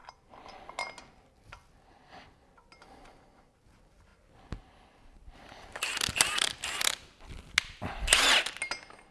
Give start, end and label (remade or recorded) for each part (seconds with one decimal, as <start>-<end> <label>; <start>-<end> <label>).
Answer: 0.0-9.1 recorded